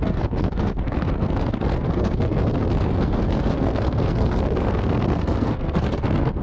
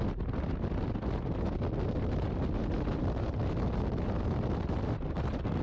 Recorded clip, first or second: second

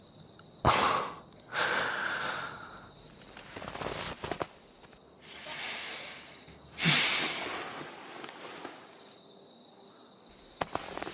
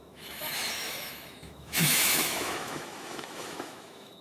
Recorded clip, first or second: first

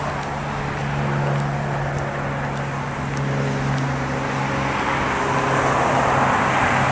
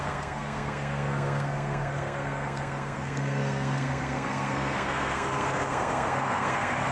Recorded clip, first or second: first